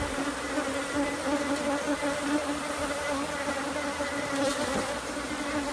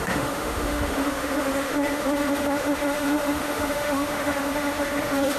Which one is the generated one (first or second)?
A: second